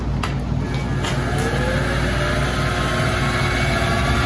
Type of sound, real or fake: real